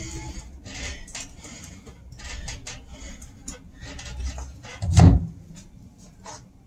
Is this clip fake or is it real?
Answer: real